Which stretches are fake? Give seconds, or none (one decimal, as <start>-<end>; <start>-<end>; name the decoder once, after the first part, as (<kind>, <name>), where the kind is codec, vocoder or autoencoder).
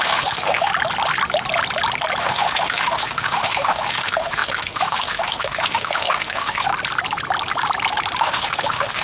0.0-0.7 (autoencoder, DAC-VAE); 2.2-6.7; 8.2-9.0